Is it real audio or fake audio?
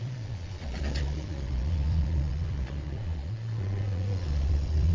fake